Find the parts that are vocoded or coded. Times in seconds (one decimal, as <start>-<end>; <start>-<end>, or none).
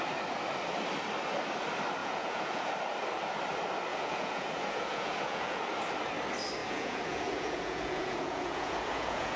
2.0-2.7; 3.9-5.6; 6.6-9.4